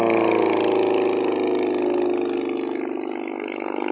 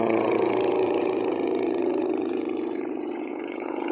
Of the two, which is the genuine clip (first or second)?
first